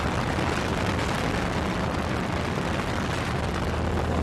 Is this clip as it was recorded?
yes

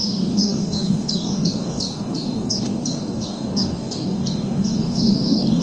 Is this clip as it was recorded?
no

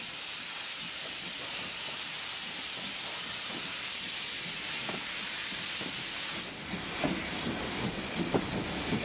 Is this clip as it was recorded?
yes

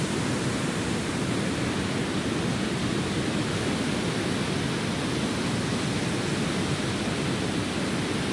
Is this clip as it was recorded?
yes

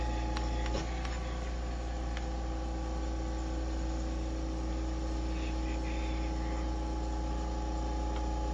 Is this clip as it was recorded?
yes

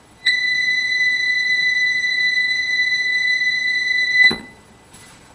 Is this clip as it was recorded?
no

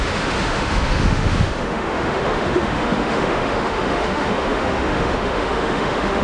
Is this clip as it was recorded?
no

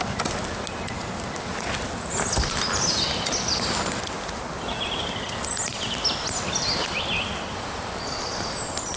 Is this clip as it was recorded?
yes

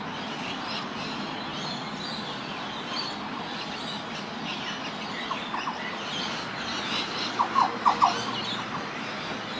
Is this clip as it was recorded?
yes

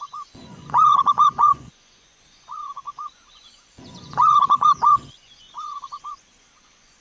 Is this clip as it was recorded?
no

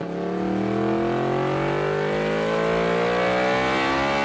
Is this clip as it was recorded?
yes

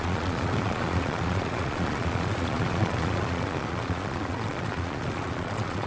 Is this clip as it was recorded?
no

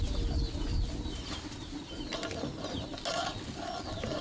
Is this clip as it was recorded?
yes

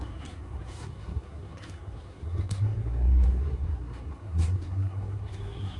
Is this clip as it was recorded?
no